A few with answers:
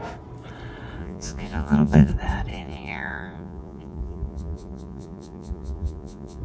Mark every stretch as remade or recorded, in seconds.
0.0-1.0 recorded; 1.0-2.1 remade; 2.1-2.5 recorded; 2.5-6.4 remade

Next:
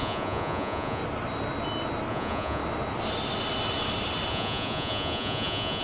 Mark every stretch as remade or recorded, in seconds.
0.0-1.0 remade; 1.0-2.1 recorded; 2.1-2.6 remade; 2.6-4.3 recorded; 4.3-5.8 remade

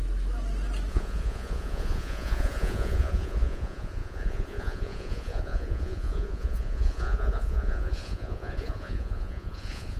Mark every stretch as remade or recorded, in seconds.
0.0-0.9 recorded; 0.9-10.0 remade